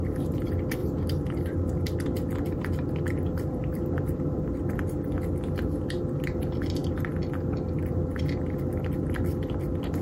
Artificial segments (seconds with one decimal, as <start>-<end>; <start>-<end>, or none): none